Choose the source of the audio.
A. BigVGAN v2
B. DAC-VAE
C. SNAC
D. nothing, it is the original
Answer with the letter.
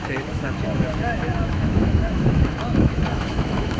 B